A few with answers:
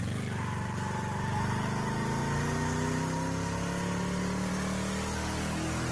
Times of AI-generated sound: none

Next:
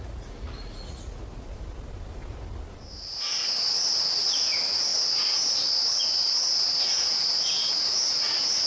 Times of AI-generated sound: 0.0-1.2; 3.4-8.7

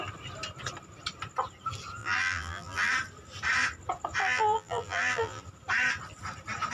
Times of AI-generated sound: 2.0-2.9; 4.2-5.4

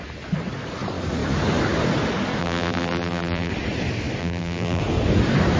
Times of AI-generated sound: 2.4-3.5; 4.2-4.8

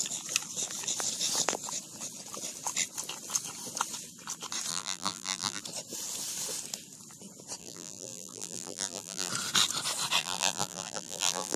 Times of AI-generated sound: 4.7-5.6; 7.6-9.3; 10.2-11.6

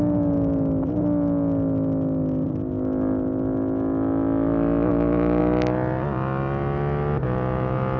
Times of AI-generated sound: 4.9-5.4